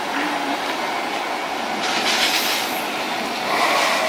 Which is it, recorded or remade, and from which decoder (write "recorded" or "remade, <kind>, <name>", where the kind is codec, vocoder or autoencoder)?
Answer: recorded